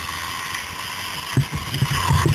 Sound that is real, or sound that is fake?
real